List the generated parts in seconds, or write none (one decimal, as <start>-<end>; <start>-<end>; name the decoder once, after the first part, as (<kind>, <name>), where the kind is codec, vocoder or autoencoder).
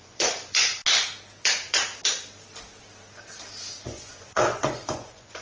0.0-0.8 (vocoder, Vocos); 1.4-1.8; 3.8-5.4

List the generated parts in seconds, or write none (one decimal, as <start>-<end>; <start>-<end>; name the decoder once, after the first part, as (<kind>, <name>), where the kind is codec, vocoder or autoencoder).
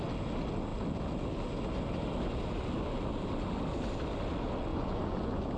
4.7-5.6 (vocoder, Vocos)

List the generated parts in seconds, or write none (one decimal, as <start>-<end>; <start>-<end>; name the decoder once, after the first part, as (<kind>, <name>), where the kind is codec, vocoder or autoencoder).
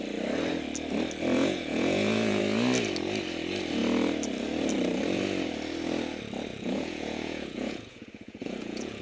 1.3-2.4 (vocoder, Vocos); 6.5-9.0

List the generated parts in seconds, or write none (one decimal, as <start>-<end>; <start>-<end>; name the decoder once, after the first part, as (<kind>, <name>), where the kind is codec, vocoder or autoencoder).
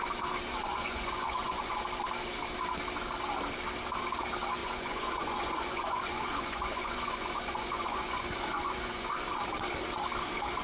0.5-1.8 (vocoder, Vocos); 4.6-9.1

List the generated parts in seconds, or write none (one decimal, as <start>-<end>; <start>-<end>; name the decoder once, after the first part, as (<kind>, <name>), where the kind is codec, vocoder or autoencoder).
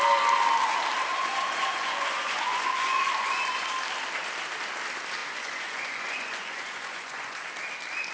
1.1-3.7 (vocoder, Vocos); 5.2-7.5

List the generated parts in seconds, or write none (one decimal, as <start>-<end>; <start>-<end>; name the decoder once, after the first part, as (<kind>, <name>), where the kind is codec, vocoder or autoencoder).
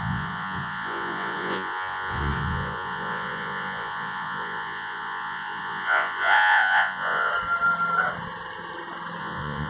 0.0-7.3 (vocoder, Vocos); 9.2-9.7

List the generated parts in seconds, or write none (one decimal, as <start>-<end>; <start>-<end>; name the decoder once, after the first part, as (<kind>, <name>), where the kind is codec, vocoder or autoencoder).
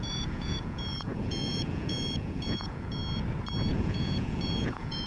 0.0-3.0 (vocoder, Vocos); 3.7-5.1